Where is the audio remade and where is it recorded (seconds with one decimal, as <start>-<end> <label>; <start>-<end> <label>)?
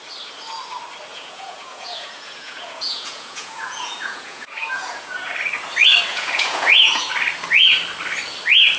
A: 0.0-1.1 recorded; 1.1-5.3 remade; 5.3-6.1 recorded; 6.1-7.1 remade; 7.1-8.8 recorded